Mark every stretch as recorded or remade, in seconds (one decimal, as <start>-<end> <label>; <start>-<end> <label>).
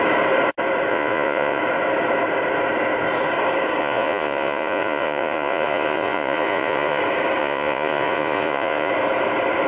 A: 0.0-0.9 recorded; 0.9-1.6 remade; 1.6-3.8 recorded; 3.8-7.0 remade; 7.0-7.4 recorded; 7.4-8.9 remade; 8.9-9.7 recorded